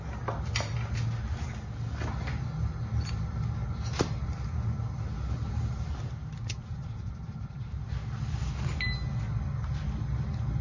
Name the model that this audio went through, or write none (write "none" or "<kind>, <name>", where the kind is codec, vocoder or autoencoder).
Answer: none